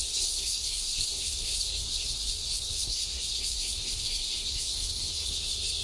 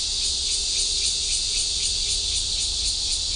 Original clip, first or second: second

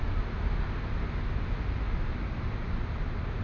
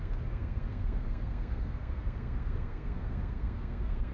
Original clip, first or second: first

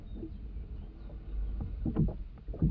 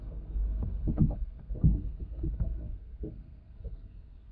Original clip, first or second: first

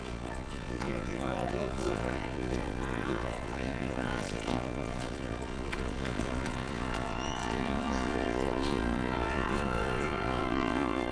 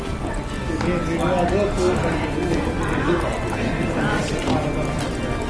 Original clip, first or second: second